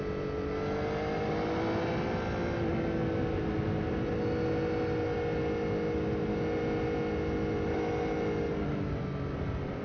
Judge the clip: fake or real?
real